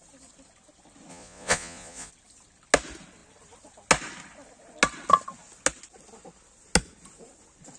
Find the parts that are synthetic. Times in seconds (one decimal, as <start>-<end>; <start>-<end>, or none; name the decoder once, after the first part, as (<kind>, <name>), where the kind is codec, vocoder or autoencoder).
1.1-2.1 (vocoder, Vocos)

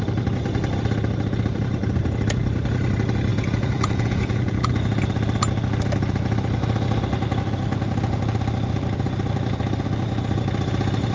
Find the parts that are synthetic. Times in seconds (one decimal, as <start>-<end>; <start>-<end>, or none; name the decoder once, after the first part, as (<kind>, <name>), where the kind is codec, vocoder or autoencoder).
3.3-5.0 (vocoder, Vocos)

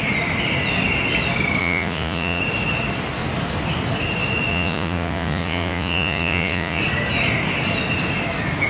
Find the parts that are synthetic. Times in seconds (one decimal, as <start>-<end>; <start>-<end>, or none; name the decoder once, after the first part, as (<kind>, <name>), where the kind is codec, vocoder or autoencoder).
1.6-2.4 (vocoder, Vocos); 4.5-6.8